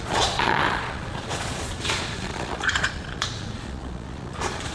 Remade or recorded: remade